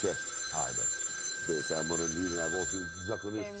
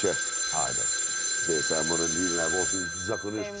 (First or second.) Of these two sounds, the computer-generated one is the first